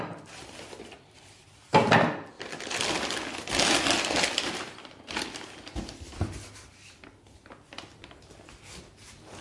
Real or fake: fake